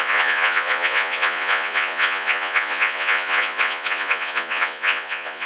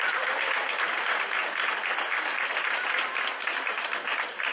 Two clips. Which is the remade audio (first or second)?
first